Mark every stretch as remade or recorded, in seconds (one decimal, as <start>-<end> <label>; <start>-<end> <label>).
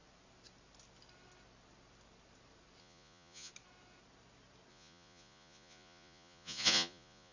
0.0-2.8 recorded; 2.8-3.5 remade; 3.5-4.7 recorded; 4.7-7.3 remade